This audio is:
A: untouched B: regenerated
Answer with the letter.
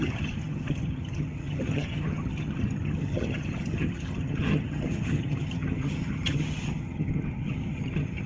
B